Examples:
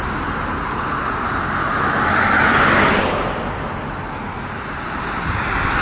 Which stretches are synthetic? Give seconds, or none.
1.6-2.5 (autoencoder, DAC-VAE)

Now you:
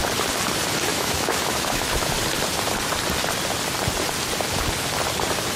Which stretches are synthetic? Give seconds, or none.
0.9-2.1 (autoencoder, DAC-VAE)

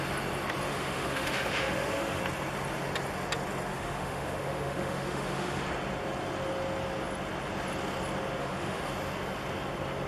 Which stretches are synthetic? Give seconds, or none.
0.7-2.2 (autoencoder, DAC-VAE); 3.7-5.6; 8.4-8.9

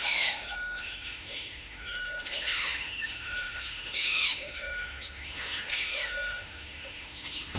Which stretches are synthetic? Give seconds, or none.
0.0-7.6 (autoencoder, DAC-VAE)

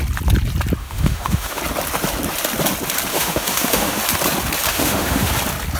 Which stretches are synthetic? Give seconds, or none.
0.8-1.6 (autoencoder, DAC-VAE); 3.1-4.0; 4.7-5.3

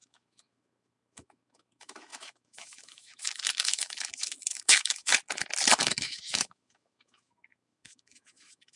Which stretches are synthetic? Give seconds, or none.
0.0-5.1 (autoencoder, DAC-VAE); 5.8-8.8

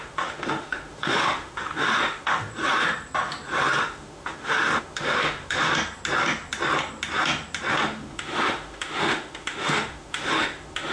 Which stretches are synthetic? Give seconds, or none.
0.0-2.5 (autoencoder, DAC-VAE); 3.8-5.7; 7.7-10.9

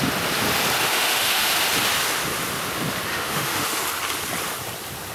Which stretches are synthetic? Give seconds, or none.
0.9-1.5 (autoencoder, DAC-VAE); 3.1-3.8